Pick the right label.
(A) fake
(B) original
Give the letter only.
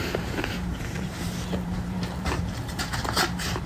A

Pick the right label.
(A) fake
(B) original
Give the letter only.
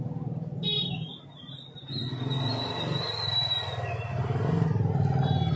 B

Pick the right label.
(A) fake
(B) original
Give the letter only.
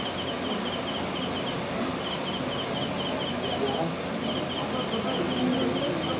B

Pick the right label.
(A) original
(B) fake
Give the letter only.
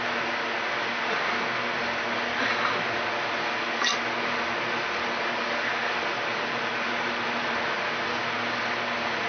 A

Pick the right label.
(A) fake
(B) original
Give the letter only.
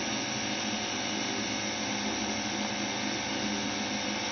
B